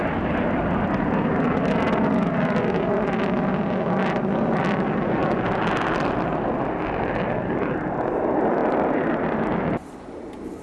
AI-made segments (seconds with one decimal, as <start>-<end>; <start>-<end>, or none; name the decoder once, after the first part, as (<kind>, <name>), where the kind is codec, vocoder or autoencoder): 5.2-7.6 (vocoder, BigVGAN v2); 8.6-10.1